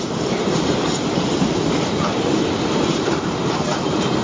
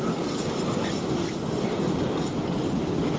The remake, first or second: first